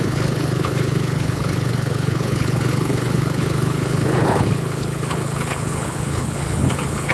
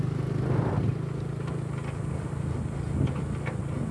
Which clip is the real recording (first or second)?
second